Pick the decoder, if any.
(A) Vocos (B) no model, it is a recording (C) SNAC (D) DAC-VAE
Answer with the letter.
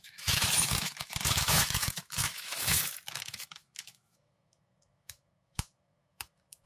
D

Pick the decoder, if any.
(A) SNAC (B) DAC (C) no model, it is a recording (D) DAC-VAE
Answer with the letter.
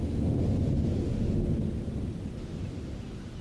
C